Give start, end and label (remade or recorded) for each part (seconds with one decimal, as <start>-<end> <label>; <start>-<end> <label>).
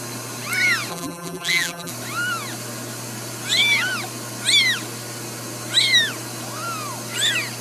0.0-0.9 recorded; 0.9-1.9 remade; 1.9-7.6 recorded